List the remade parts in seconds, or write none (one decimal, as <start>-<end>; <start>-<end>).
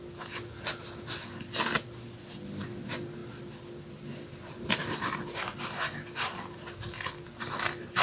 none